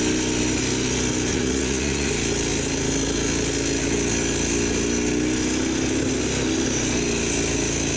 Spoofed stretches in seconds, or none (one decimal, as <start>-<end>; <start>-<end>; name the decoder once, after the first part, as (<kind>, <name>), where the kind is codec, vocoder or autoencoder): 1.3-2.1 (vocoder, Vocos)